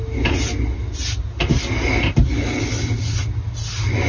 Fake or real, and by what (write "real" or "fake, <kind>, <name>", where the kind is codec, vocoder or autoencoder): real